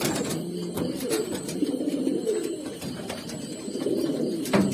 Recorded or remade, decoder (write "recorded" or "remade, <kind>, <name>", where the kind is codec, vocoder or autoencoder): remade, vocoder, BigVGAN v2